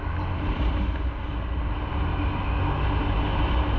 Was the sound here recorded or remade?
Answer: recorded